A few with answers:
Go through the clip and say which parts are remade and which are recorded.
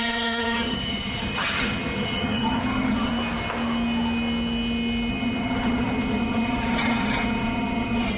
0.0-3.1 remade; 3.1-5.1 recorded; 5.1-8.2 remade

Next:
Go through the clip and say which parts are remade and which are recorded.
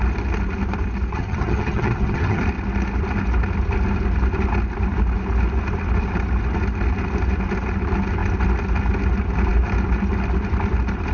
0.0-1.1 recorded; 1.1-2.4 remade; 2.4-11.1 recorded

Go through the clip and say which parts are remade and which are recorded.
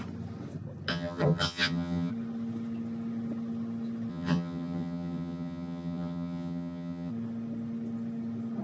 0.0-0.9 recorded; 0.9-2.1 remade; 2.1-4.1 recorded; 4.1-7.1 remade; 7.1-8.6 recorded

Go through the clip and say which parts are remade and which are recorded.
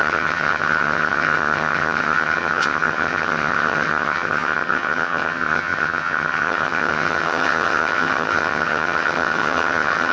0.0-10.1 remade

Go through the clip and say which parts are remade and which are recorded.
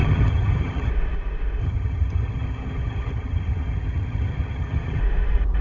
0.0-0.9 remade; 0.9-1.6 recorded; 1.6-5.0 remade; 5.0-5.6 recorded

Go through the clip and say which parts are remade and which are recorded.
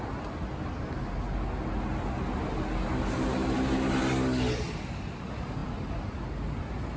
0.0-7.0 recorded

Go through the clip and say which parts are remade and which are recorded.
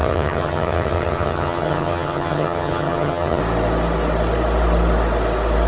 0.0-3.4 remade; 3.4-5.7 recorded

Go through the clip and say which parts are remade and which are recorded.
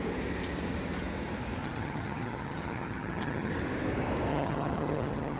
0.0-1.6 recorded; 1.6-3.5 remade; 3.5-4.3 recorded; 4.3-5.4 remade